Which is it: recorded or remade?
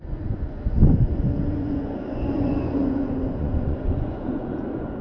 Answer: remade